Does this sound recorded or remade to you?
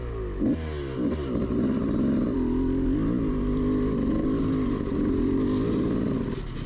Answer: recorded